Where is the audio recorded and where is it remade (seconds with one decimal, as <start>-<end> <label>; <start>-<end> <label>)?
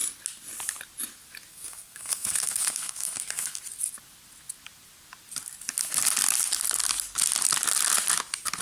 0.0-1.5 recorded; 1.5-3.6 remade; 3.6-8.6 recorded